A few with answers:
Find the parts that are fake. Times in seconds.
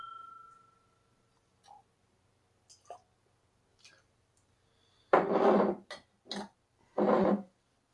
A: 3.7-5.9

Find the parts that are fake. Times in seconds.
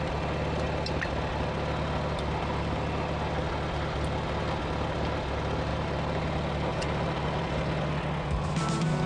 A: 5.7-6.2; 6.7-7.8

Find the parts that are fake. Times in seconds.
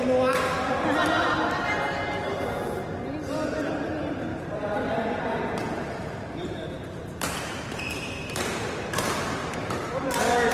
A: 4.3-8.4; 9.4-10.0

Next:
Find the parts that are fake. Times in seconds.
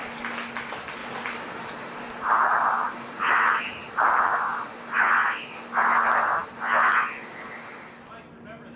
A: 1.0-4.2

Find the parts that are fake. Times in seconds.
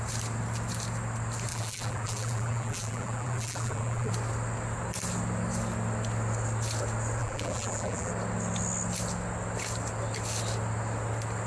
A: 1.5-4.1; 7.2-8.1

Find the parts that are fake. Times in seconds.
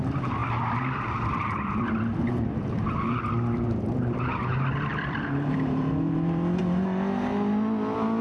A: 0.4-3.2; 4.9-6.6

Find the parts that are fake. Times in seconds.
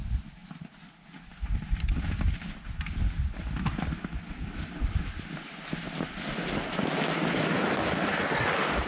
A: none